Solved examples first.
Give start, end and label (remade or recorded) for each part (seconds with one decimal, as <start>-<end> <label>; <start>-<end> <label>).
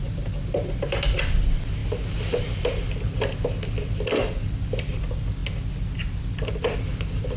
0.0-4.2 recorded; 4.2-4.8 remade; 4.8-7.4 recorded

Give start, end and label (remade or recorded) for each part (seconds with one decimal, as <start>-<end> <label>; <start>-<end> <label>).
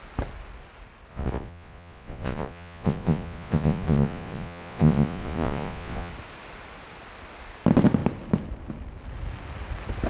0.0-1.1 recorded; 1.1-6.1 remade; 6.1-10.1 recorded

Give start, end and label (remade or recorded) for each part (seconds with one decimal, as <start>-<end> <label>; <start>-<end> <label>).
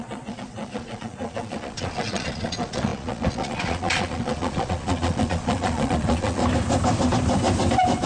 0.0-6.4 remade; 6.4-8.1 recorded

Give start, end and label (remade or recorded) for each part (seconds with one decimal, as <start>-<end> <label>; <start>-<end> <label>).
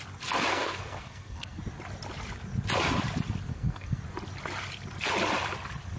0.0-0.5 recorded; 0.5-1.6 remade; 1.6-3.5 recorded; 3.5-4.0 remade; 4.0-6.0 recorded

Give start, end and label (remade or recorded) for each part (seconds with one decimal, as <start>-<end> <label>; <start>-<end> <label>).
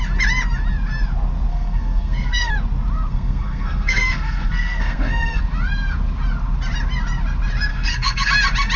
0.0-1.5 recorded; 1.5-2.5 remade; 2.5-3.1 recorded; 3.1-5.4 remade; 5.4-7.7 recorded; 7.7-8.3 remade; 8.3-8.8 recorded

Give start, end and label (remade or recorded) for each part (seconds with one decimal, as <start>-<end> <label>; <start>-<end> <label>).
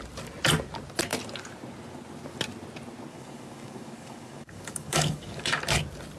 0.0-3.1 recorded; 3.1-5.6 remade; 5.6-6.2 recorded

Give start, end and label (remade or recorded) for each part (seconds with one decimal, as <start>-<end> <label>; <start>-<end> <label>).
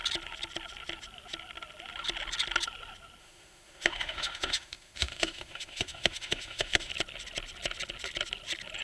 0.0-3.2 recorded; 3.2-6.9 remade; 6.9-8.8 recorded